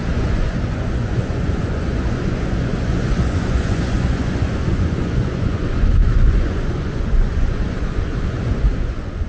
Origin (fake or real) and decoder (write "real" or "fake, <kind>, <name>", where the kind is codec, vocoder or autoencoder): fake, vocoder, Vocos